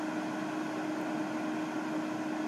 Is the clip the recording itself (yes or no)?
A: yes